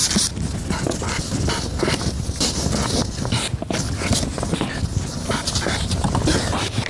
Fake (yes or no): no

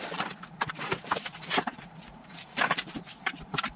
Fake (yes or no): yes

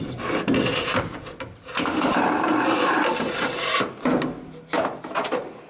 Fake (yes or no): no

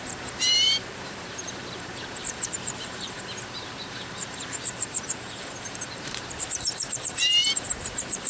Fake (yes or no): yes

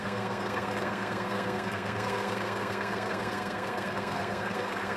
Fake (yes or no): yes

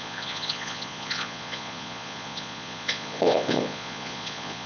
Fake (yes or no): yes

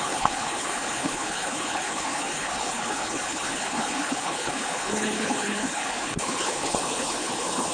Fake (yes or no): yes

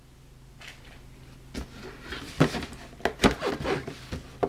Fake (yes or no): no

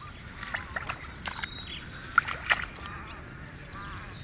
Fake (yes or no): no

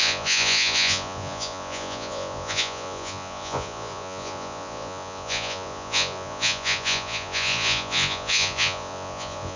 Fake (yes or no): yes